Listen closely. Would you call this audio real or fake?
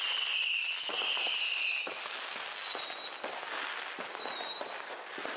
real